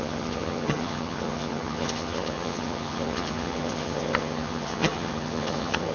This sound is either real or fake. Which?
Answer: fake